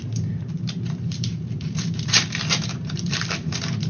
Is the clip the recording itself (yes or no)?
no